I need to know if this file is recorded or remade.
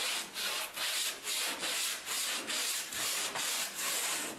recorded